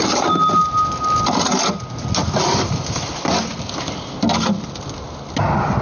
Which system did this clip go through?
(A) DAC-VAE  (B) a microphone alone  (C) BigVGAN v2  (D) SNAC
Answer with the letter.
B